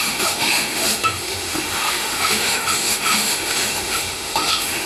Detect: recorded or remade remade